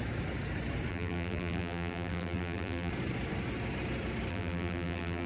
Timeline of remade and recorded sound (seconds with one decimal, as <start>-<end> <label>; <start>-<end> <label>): 0.0-0.9 recorded; 0.9-2.9 remade; 2.9-4.3 recorded; 4.3-5.3 remade